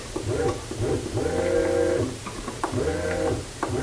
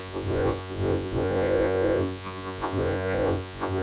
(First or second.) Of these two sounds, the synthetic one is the second